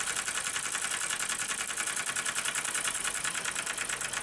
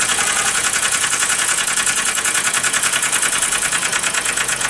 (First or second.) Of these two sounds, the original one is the first